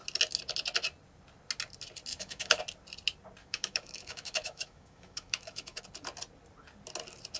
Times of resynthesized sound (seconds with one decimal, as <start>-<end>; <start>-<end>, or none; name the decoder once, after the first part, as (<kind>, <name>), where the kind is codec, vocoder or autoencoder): 2.1-2.6 (autoencoder, DAC-VAE); 3.4-5.8